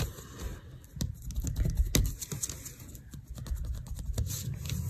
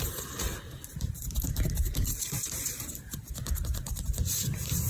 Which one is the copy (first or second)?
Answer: second